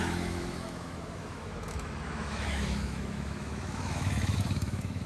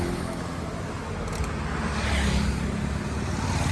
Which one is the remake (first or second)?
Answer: first